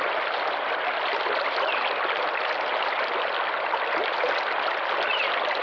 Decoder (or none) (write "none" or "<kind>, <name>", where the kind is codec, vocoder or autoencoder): none